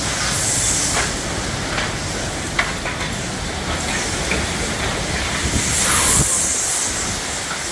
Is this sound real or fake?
real